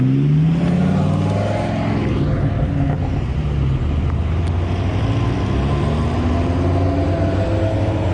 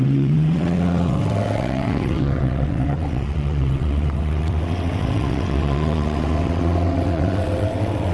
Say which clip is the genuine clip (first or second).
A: first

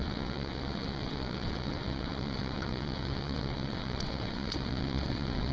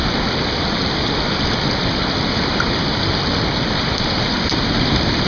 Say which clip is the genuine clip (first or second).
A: second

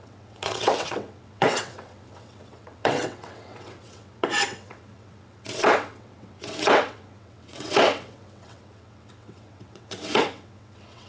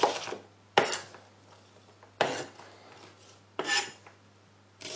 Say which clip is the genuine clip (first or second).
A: second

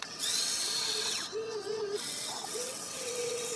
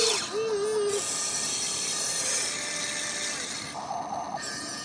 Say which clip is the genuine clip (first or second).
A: second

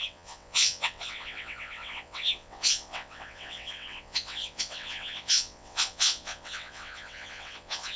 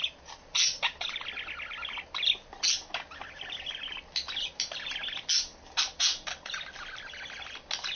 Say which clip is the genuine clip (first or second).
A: second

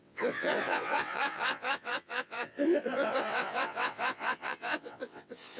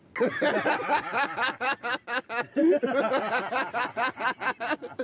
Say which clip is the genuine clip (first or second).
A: second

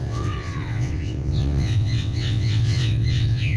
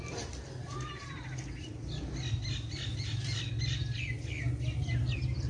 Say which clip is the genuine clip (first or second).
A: second